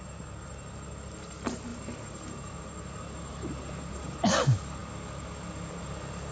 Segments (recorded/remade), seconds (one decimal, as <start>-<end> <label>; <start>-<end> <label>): 0.0-6.3 recorded

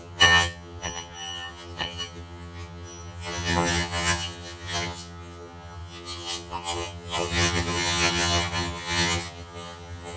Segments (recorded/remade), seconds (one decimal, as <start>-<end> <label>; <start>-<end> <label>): 0.0-10.2 remade

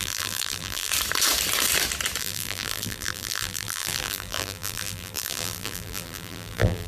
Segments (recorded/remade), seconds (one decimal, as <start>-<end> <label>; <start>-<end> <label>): 0.0-0.9 remade; 0.9-2.2 recorded; 2.2-6.9 remade